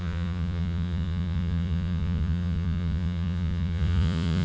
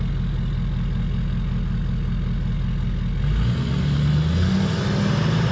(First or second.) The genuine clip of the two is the second